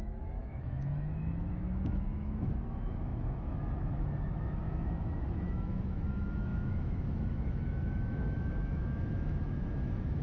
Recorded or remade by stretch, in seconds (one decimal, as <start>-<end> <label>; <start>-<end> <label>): 0.0-10.2 remade